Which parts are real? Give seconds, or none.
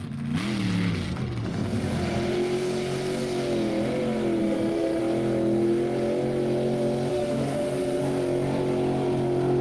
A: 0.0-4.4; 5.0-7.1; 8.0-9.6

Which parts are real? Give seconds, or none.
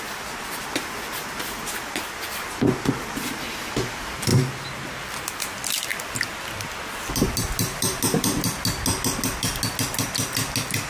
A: 0.0-10.9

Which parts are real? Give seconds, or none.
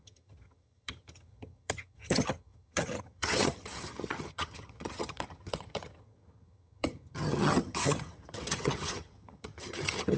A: none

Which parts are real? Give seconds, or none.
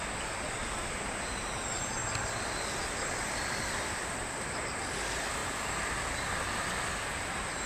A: 0.0-2.0; 4.3-5.4; 6.5-7.7